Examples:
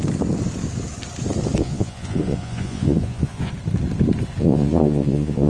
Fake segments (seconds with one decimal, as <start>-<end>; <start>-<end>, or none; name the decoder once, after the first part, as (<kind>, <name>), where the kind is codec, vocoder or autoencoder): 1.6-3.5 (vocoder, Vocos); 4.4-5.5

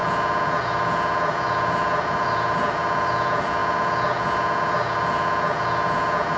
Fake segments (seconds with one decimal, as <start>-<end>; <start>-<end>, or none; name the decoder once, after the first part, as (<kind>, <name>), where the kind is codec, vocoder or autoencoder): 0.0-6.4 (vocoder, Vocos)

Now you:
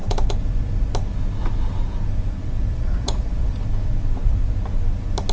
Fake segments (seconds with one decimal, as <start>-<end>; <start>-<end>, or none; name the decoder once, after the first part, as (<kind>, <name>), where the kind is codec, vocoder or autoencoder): 2.7-3.5 (vocoder, Vocos)

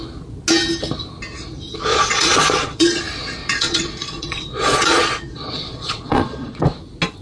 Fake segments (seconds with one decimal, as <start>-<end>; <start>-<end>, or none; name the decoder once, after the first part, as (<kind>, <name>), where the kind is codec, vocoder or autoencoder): 1.9-3.0 (vocoder, Vocos); 3.4-6.6